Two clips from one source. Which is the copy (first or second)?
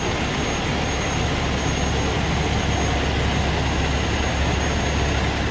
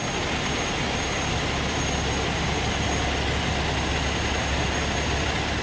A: second